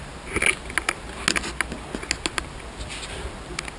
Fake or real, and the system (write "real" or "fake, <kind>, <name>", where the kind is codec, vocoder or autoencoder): real